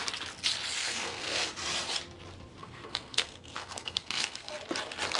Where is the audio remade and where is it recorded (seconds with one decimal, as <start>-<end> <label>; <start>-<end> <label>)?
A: 0.0-0.8 recorded; 0.8-1.5 remade; 1.5-2.6 recorded; 2.6-4.5 remade; 4.5-5.2 recorded

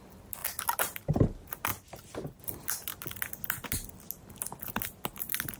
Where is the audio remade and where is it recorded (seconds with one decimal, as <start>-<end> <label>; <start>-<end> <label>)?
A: 0.0-5.6 recorded